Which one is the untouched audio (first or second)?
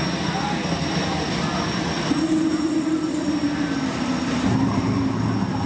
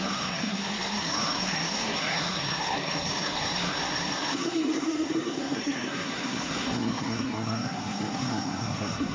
first